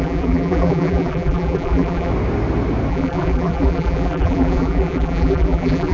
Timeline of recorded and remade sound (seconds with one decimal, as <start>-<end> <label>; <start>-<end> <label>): 0.0-2.1 remade; 2.1-2.9 recorded; 2.9-5.9 remade